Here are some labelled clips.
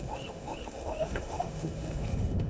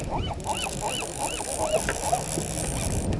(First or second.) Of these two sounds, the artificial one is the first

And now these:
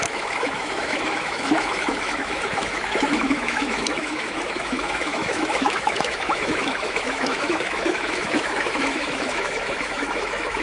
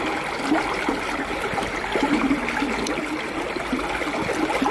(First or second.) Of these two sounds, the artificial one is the first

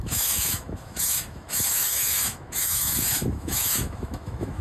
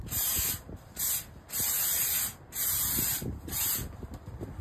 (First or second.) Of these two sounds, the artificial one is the first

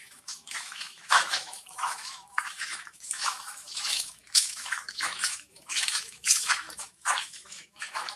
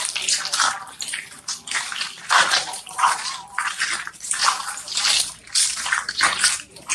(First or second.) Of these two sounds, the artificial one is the first